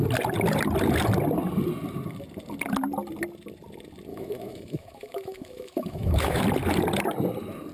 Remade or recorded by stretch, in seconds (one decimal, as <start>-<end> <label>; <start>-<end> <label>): 0.0-4.1 recorded; 4.1-6.4 remade; 6.4-7.7 recorded